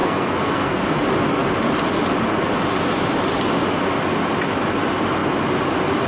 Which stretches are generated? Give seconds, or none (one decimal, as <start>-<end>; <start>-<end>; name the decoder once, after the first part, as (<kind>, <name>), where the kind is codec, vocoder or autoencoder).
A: 0.0-0.8 (codec, SNAC)